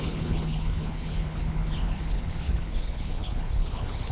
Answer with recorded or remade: remade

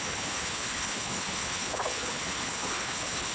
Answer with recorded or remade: remade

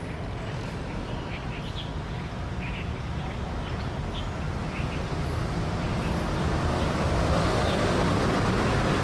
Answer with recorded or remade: recorded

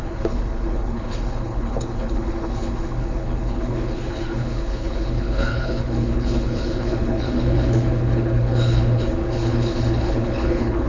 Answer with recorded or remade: remade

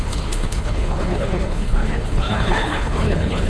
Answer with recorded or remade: remade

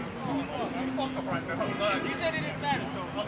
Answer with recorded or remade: recorded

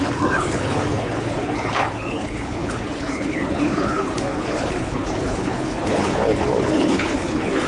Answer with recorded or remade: remade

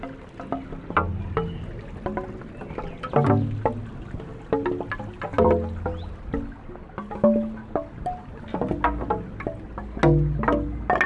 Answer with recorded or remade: recorded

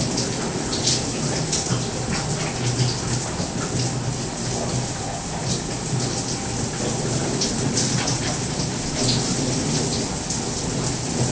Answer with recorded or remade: recorded